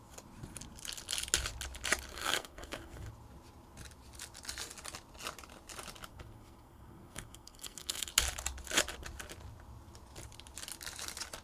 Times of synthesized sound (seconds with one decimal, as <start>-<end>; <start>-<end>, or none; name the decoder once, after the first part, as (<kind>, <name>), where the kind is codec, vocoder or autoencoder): 2.1-3.1 (codec, SNAC); 6.1-8.1